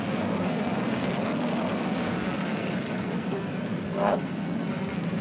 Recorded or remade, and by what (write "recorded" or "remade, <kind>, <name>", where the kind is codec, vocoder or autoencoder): remade, codec, SNAC